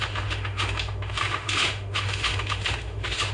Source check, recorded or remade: remade